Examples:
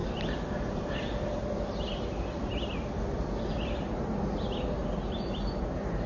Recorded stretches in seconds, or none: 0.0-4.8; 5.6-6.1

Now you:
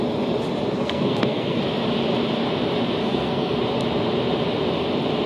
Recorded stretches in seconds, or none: 0.0-0.8; 1.6-3.0; 3.6-5.3

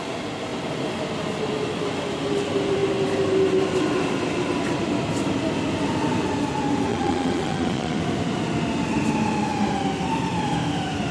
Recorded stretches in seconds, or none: 0.0-6.9; 8.0-11.1